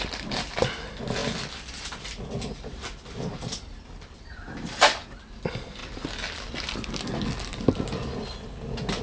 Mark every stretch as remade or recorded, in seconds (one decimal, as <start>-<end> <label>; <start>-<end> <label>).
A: 0.0-9.0 recorded